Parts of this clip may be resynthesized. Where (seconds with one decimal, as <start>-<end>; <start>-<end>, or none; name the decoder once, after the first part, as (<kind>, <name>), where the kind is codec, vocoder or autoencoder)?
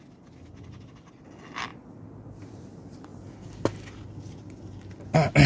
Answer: none